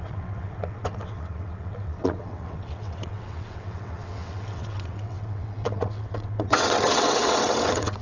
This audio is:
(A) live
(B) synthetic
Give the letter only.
B